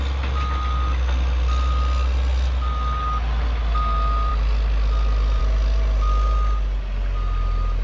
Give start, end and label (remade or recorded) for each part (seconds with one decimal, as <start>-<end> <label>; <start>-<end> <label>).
0.0-7.8 recorded